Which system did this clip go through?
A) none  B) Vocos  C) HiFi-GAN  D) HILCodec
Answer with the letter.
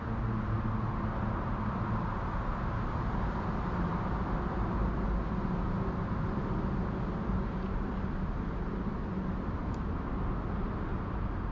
A